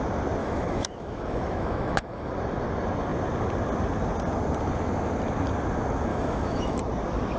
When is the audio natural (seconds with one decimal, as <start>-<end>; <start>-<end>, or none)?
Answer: 0.0-0.4; 2.3-6.1; 6.8-7.4